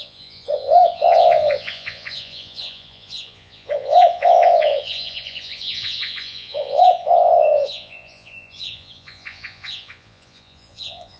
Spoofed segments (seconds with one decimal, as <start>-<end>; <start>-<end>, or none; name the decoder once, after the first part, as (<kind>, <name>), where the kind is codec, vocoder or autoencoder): 0.0-11.2 (vocoder, Vocos)